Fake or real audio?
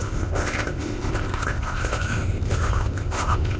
fake